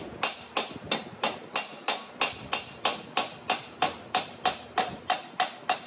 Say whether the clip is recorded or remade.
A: recorded